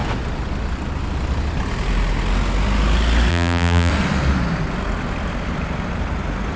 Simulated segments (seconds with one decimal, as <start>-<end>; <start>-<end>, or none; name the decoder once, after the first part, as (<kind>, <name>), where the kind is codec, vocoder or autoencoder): 3.3-3.9 (vocoder, BigVGAN v2)